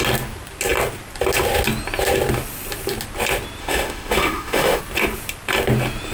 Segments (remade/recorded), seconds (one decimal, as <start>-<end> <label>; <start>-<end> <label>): 0.0-3.6 recorded; 3.6-4.8 remade; 4.8-6.1 recorded